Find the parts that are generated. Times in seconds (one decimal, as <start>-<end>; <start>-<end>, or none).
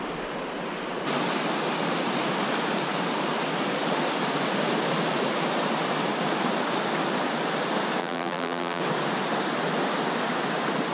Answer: 8.0-8.8